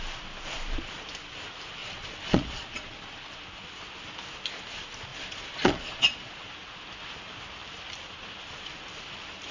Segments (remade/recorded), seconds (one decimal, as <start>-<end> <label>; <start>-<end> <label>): 0.0-1.8 recorded; 1.8-3.4 remade; 3.4-5.1 recorded; 5.1-6.3 remade; 6.3-9.5 recorded